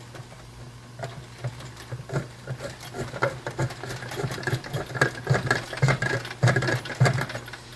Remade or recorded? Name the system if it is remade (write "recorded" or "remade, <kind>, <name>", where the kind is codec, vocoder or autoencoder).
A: recorded